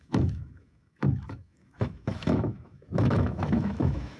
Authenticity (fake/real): fake